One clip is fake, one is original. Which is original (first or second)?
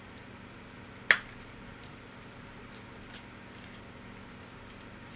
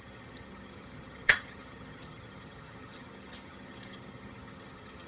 first